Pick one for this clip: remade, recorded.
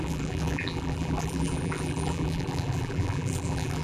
remade